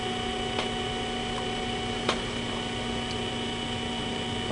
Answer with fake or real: real